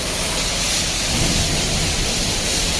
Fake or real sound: real